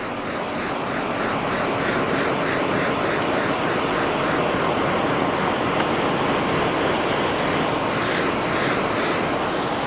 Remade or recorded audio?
recorded